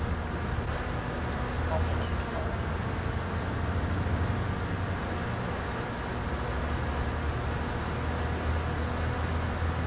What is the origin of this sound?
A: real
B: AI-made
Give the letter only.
A